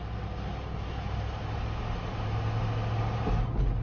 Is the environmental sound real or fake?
real